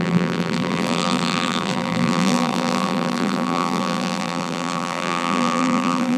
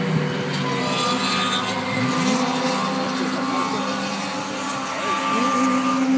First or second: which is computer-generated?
first